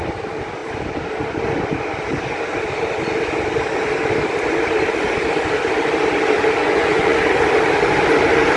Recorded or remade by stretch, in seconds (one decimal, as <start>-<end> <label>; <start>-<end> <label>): 0.0-6.6 recorded; 6.6-7.2 remade; 7.2-8.6 recorded